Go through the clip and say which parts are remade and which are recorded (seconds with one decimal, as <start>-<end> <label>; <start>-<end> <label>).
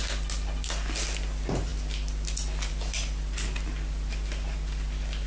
0.0-5.3 recorded